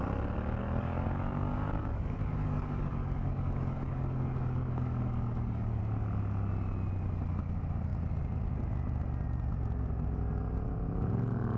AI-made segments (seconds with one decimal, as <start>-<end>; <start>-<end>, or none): 0.6-5.8